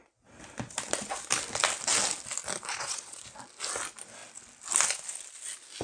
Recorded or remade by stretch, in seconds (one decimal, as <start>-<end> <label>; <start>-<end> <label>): 0.0-2.7 recorded; 2.7-3.2 remade; 3.2-5.8 recorded